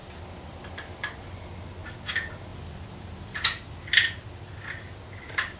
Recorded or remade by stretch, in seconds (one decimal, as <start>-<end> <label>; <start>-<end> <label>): 0.0-1.5 remade; 1.5-2.5 recorded; 2.5-3.8 remade; 3.8-5.6 recorded